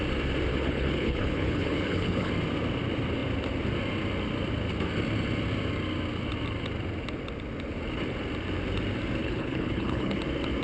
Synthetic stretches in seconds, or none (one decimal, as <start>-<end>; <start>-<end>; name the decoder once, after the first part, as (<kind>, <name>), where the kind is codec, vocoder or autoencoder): 0.5-2.3 (codec, HILCodec); 9.2-10.2